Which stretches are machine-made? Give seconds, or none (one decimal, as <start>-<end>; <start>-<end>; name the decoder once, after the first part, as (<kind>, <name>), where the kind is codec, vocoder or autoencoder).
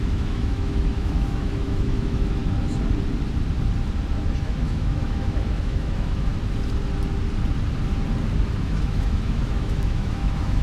0.0-2.4 (autoencoder, DAC-VAE); 4.4-6.3; 8.6-10.6